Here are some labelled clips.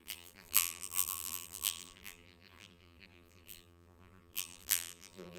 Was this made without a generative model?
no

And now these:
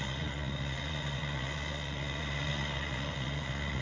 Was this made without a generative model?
no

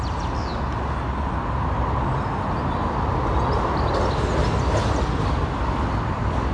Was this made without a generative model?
yes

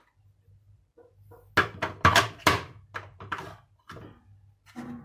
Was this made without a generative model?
yes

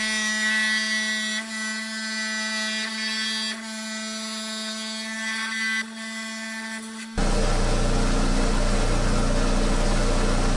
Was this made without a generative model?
yes